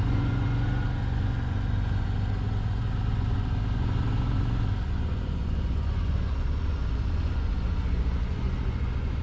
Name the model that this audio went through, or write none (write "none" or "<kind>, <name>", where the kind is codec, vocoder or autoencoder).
vocoder, Vocos